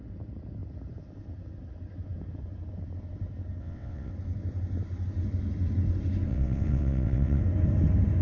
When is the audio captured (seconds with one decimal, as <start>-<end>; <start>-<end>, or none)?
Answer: 0.0-3.6; 4.1-6.3; 7.4-8.2